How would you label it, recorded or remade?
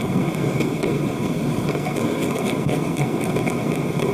remade